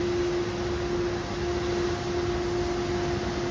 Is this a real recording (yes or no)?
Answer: yes